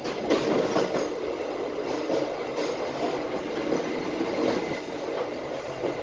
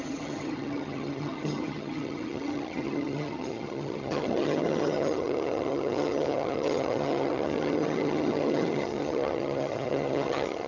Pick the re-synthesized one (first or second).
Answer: second